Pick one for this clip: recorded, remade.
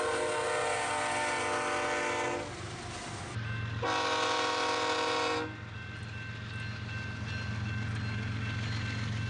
recorded